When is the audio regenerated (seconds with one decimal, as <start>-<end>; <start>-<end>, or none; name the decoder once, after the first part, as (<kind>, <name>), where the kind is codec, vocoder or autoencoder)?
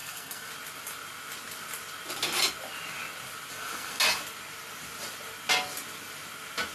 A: 0.0-0.5 (codec, SNAC); 3.5-4.0